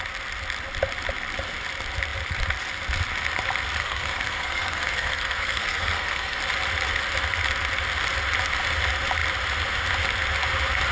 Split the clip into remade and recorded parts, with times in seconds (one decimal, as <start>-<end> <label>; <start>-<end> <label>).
0.0-3.8 recorded; 3.8-6.4 remade; 6.4-10.9 recorded